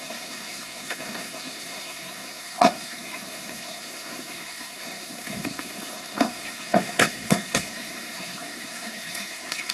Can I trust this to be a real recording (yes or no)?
no